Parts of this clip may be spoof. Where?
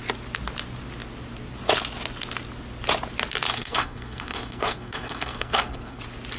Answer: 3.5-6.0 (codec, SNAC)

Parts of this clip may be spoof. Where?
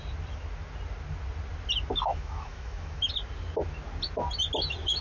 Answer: 2.1-3.1 (autoencoder, DAC-VAE)